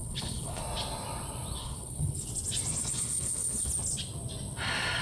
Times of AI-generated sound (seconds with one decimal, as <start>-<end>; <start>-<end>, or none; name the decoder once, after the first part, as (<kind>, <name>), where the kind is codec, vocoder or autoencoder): 0.0-0.6 (codec, HILCodec); 1.6-2.3; 2.8-3.7